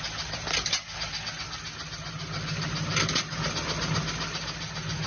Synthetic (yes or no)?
no